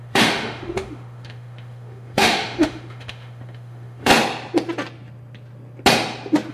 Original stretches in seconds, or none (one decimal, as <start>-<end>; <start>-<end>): 4.1-6.5